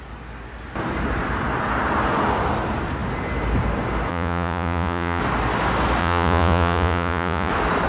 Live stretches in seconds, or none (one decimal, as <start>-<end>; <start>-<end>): 0.0-4.1; 5.2-6.0; 7.5-7.9